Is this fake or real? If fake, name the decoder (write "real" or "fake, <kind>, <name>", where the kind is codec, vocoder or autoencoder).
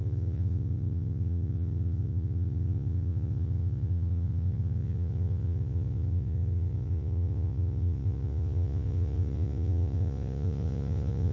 fake, vocoder, Vocos